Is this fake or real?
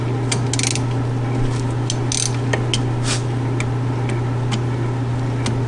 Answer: real